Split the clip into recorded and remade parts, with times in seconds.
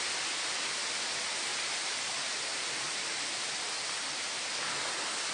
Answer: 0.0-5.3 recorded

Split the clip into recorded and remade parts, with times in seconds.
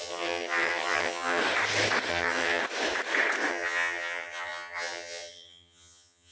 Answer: 0.0-1.4 remade; 1.4-2.1 recorded; 2.1-2.6 remade; 2.6-3.5 recorded; 3.5-6.3 remade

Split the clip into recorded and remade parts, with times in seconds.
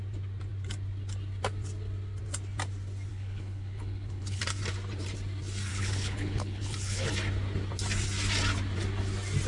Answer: 0.0-3.1 recorded; 3.1-4.4 remade; 4.4-5.7 recorded; 5.7-7.1 remade; 7.1-9.5 recorded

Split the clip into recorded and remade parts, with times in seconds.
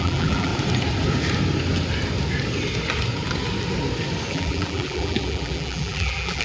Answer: 0.0-0.5 remade; 0.5-4.3 recorded; 4.3-6.4 remade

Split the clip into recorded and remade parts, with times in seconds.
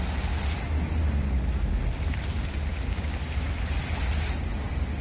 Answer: 0.0-5.0 recorded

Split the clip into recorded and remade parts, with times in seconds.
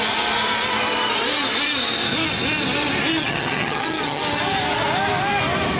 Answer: 0.0-3.2 recorded; 3.2-4.2 remade; 4.2-5.8 recorded